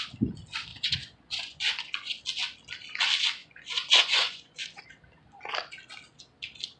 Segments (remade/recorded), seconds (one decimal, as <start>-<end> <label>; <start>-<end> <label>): 0.0-0.7 recorded; 0.7-2.2 remade; 2.2-3.4 recorded; 3.4-4.8 remade; 4.8-6.8 recorded